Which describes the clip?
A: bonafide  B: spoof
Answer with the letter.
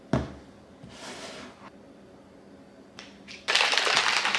A